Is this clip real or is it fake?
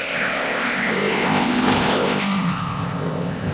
fake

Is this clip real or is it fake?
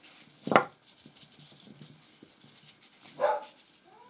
real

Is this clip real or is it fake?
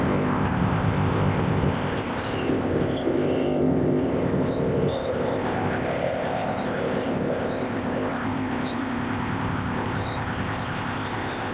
fake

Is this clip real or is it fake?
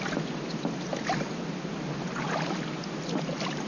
real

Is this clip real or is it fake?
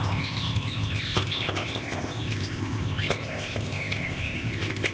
fake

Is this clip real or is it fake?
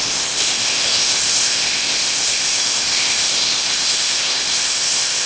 fake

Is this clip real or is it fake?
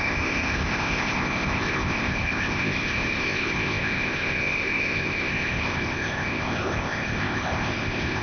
fake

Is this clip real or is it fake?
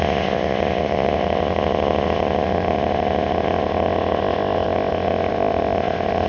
fake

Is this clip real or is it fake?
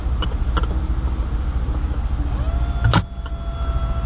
real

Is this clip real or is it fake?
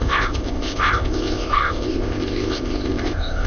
fake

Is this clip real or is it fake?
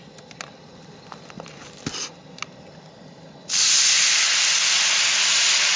real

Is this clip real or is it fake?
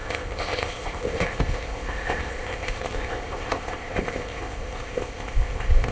fake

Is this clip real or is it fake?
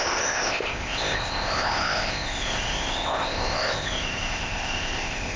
fake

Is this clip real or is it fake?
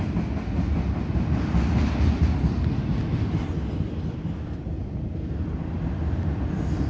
real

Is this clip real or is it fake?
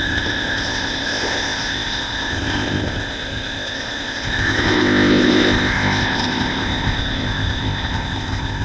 fake